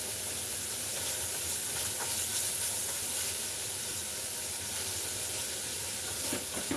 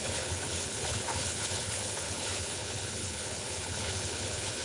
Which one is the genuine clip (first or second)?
first